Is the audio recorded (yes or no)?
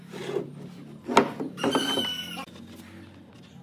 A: yes